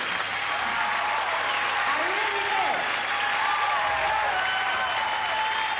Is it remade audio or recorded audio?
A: recorded